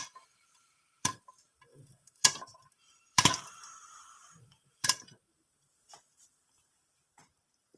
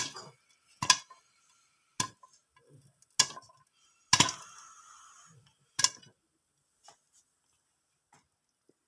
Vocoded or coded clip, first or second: first